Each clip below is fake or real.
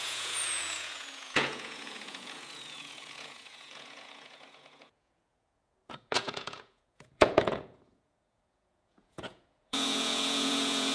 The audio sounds fake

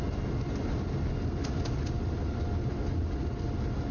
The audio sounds real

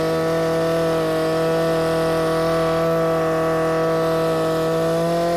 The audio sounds real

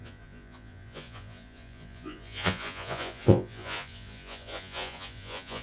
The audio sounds fake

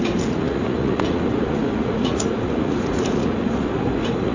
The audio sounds fake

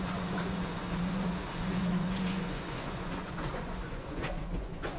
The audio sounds fake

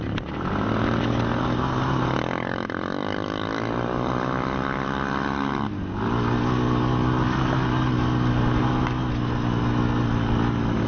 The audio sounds real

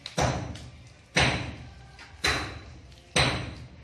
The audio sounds real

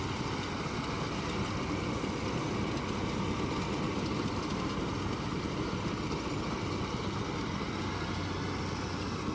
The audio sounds real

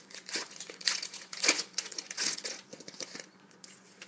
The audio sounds fake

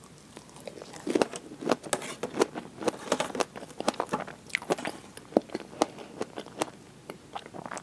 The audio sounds real